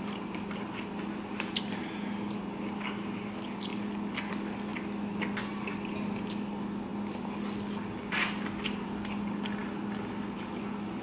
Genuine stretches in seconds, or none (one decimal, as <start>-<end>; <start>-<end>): 0.0-11.0